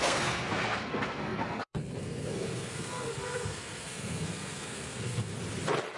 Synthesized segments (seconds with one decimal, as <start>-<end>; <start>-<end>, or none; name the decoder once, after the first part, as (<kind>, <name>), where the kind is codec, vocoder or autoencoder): 0.0-5.3 (codec, SNAC)